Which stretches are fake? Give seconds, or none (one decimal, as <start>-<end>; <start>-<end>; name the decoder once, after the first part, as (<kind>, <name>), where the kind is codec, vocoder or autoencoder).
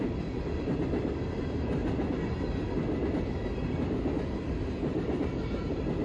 none